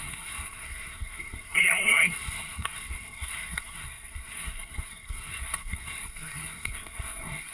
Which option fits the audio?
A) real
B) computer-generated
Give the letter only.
B